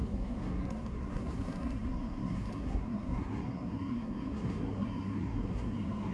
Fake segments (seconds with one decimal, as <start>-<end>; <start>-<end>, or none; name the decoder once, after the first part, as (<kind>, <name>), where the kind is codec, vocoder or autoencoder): 0.0-6.1 (codec, SNAC)

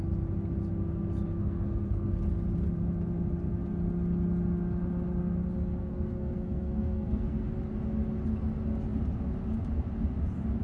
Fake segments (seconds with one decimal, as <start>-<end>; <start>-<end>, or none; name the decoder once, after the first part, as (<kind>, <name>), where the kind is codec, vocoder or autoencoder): 1.4-2.1 (codec, SNAC); 5.8-7.5

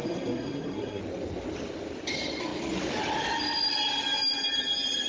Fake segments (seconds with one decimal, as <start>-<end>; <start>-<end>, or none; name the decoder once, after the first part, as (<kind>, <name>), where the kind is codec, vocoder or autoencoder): 0.0-1.0 (codec, SNAC)

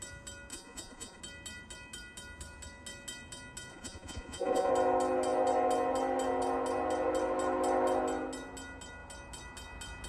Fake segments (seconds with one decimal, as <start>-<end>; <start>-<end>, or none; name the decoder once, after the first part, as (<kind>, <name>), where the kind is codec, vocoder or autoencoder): 0.5-1.2 (vocoder, Vocos); 3.7-4.7

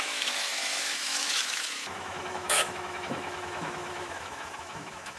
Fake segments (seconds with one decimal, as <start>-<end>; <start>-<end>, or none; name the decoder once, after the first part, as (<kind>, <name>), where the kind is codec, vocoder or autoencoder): 0.0-5.2 (autoencoder, DAC-VAE)

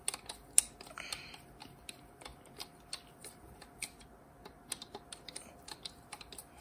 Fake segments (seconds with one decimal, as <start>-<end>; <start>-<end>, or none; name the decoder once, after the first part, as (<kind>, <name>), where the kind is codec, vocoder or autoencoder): none

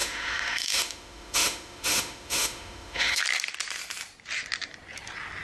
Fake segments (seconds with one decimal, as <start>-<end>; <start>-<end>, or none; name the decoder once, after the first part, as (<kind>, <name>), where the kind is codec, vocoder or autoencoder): 0.0-3.2 (autoencoder, DAC-VAE)

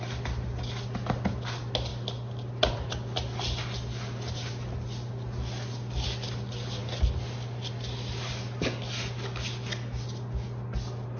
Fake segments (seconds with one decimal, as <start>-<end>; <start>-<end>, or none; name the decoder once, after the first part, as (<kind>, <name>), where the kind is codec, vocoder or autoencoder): none